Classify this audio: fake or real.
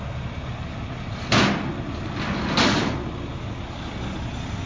real